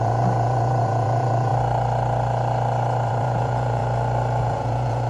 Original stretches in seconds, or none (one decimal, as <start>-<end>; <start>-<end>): 1.5-3.1; 3.8-4.4

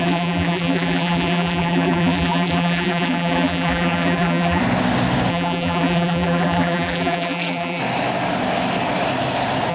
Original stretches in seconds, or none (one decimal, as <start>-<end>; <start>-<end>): 4.6-5.3; 7.8-9.7